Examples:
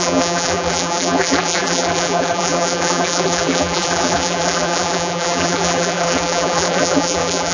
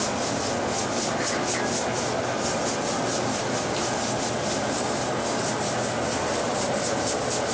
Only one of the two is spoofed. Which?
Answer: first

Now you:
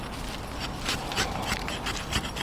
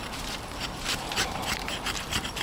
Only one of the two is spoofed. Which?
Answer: second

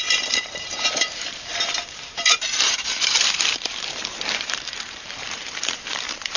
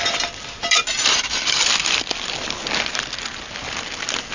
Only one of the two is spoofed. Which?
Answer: first